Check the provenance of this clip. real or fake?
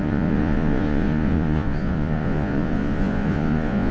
fake